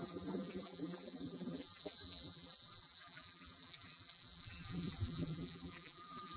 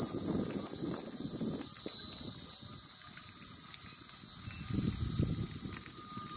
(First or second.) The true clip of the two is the second